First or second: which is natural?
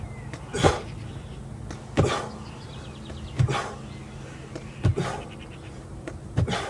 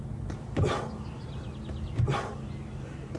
first